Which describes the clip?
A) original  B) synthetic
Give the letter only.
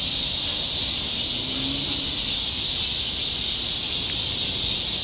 A